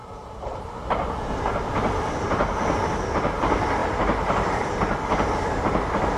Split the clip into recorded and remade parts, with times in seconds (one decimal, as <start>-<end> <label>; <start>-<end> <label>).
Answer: 0.0-3.8 recorded; 3.8-4.7 remade; 4.7-6.2 recorded